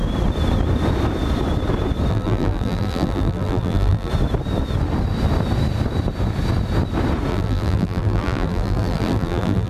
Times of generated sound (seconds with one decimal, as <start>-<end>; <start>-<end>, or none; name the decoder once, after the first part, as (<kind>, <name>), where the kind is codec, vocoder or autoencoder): 2.1-4.1 (vocoder, BigVGAN v2); 7.3-9.7